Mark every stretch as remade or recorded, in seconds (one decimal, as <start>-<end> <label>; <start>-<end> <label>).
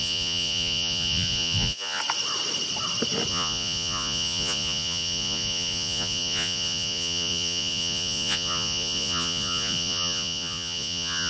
0.0-2.0 remade; 2.0-3.3 recorded; 3.3-11.3 remade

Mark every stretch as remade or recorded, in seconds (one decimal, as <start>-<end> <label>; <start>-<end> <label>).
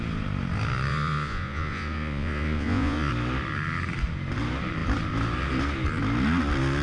0.0-0.9 recorded; 0.9-3.1 remade; 3.1-6.8 recorded